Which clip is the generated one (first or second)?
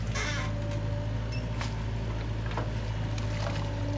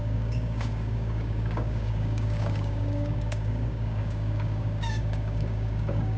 second